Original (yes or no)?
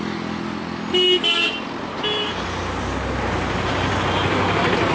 yes